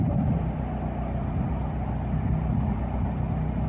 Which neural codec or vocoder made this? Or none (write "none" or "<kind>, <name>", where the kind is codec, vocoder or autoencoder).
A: none